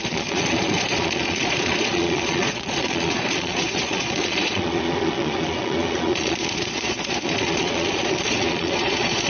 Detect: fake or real fake